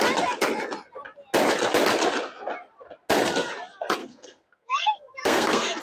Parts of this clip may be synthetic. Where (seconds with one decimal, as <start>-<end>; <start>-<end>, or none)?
4.0-5.8